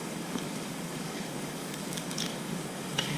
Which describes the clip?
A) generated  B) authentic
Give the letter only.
A